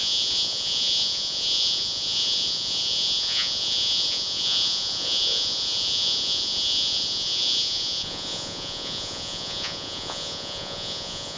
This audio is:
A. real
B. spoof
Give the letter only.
B